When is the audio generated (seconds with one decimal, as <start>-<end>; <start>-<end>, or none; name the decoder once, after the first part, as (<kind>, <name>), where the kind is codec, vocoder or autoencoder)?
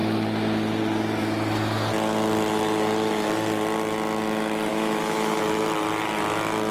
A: 4.7-5.4 (autoencoder, DAC-VAE)